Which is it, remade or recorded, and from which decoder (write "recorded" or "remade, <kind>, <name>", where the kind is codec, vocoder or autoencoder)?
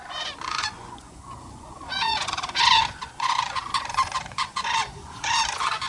remade, vocoder, Vocos